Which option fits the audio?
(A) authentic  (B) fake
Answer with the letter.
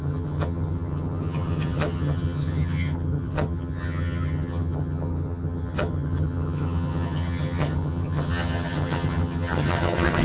B